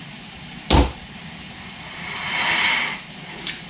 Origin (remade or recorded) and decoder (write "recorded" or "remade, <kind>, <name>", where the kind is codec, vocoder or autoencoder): recorded